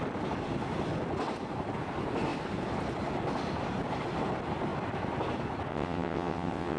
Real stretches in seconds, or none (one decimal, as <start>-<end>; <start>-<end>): 0.0-5.7